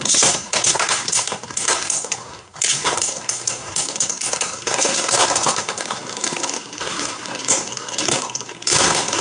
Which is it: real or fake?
fake